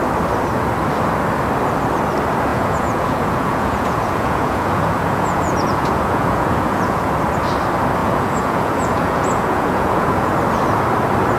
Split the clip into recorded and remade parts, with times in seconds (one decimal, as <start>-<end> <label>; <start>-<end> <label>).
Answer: 0.0-2.5 recorded; 2.5-7.1 remade; 7.1-8.0 recorded; 8.0-10.3 remade; 10.3-11.4 recorded